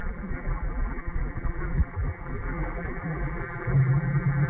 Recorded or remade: remade